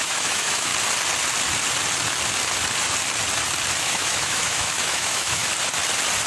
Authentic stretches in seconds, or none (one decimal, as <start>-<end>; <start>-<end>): 0.7-3.8; 5.4-6.3